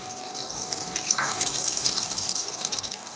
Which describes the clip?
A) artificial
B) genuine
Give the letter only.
A